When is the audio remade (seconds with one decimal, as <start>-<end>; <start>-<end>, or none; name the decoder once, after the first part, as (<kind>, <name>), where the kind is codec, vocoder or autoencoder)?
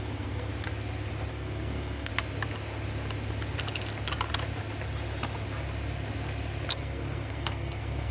0.0-0.5 (codec, SNAC); 1.3-2.1; 6.7-8.1